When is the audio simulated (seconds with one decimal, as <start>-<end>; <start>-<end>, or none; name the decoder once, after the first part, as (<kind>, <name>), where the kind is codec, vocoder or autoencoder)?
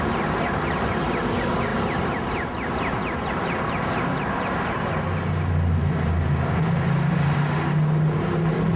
none